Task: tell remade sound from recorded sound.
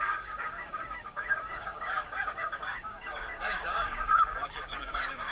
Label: remade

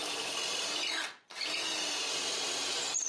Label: recorded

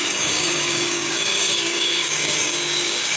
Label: remade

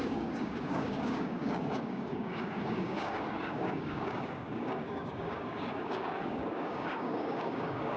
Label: remade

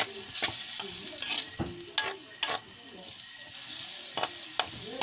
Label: recorded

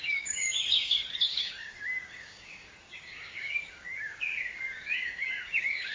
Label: remade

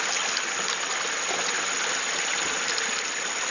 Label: recorded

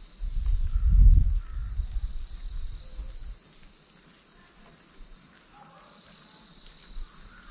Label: recorded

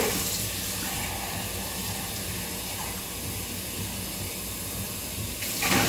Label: recorded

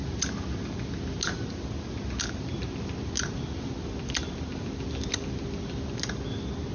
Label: recorded